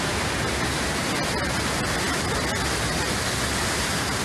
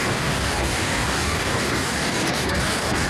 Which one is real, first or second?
first